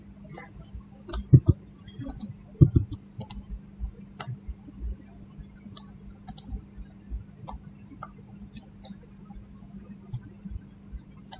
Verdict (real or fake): real